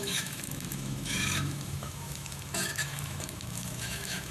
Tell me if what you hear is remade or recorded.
remade